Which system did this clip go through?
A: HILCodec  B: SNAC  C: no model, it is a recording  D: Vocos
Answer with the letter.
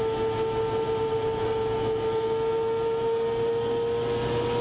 C